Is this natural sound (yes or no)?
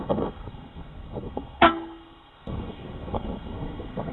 no